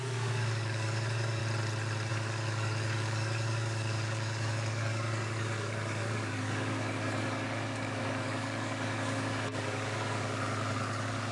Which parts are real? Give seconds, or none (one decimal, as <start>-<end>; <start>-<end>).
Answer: 1.4-2.1